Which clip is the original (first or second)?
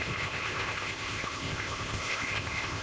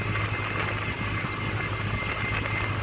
second